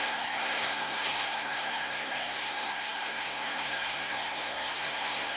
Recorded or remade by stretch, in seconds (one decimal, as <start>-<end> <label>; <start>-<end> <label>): 0.0-5.4 remade